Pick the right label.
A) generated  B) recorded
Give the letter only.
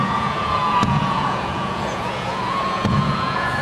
A